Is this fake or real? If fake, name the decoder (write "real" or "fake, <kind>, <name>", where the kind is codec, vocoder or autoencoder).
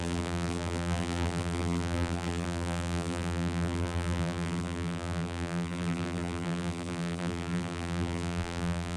fake, vocoder, BigVGAN v2